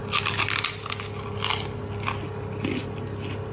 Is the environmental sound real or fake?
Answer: real